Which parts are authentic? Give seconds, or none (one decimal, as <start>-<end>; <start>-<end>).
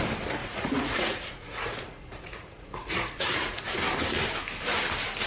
0.0-0.4; 3.6-5.3